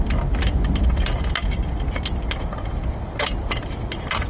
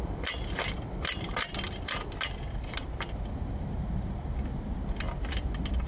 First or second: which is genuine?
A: first